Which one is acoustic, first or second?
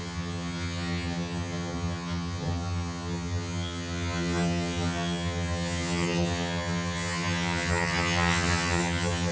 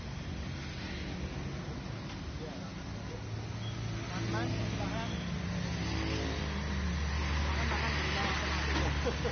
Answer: second